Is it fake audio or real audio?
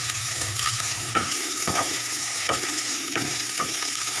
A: fake